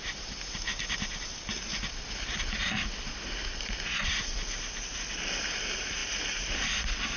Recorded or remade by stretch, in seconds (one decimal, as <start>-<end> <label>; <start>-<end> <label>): 0.0-7.2 recorded